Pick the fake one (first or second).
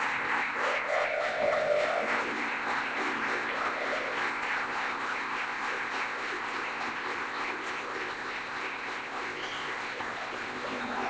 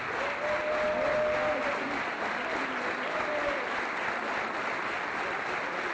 first